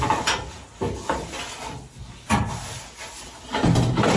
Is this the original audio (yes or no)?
no